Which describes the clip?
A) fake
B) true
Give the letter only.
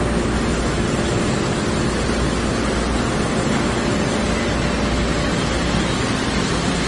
B